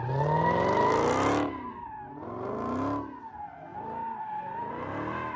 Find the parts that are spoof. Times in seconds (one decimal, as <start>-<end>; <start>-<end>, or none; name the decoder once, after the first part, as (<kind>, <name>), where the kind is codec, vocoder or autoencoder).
none